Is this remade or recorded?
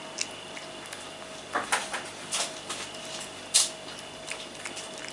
recorded